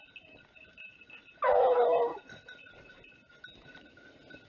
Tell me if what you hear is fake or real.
real